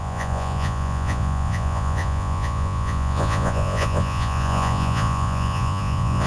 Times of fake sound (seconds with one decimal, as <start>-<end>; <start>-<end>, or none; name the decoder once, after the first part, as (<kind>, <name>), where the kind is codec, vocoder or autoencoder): 0.0-6.3 (vocoder, Vocos)